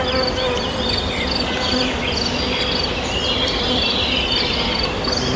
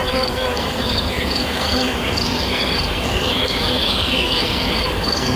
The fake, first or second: second